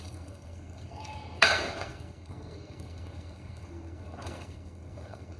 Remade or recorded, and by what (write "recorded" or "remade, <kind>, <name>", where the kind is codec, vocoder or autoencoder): remade, codec, SNAC